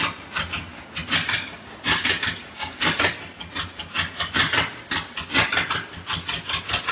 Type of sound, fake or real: real